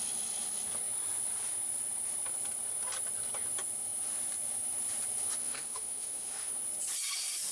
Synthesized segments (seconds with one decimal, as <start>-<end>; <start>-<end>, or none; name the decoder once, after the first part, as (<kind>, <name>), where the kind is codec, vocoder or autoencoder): 5.4-6.5 (autoencoder, DAC-VAE)